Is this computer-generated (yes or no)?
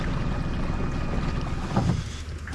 no